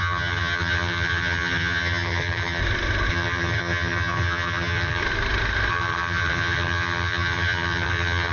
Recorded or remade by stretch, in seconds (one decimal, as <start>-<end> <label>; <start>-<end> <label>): 0.0-2.6 remade; 2.6-3.1 recorded; 3.1-5.0 remade; 5.0-5.7 recorded; 5.7-8.3 remade